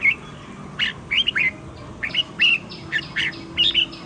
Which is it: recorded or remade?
recorded